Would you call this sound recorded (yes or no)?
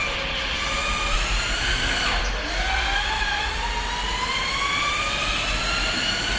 yes